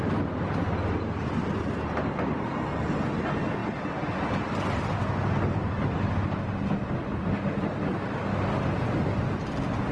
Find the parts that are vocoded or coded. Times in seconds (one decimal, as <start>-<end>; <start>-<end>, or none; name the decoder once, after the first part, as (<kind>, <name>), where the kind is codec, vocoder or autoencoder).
none